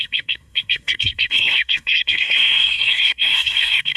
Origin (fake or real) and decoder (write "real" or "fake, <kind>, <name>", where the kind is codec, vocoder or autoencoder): fake, codec, SNAC